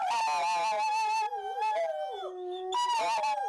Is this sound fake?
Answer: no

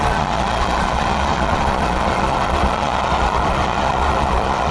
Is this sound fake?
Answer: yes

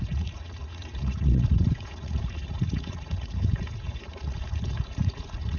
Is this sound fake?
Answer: yes